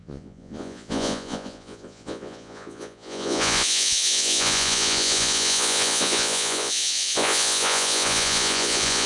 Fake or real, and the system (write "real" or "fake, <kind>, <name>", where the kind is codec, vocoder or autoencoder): fake, vocoder, Vocos